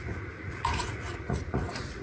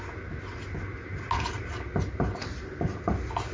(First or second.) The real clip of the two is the second